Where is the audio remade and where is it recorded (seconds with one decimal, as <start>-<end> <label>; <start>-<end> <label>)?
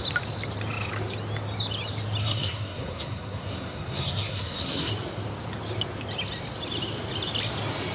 0.0-2.2 recorded; 2.2-4.9 remade; 4.9-7.9 recorded